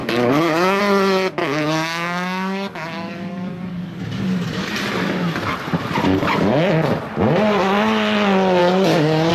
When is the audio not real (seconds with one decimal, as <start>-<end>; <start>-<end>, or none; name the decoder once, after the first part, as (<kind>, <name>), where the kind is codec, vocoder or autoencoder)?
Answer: 0.0-0.8 (codec, DAC); 1.4-4.7; 6.1-6.7; 8.6-9.3